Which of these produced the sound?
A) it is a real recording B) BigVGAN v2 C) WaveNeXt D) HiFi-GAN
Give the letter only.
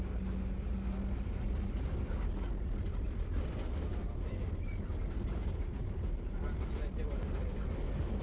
A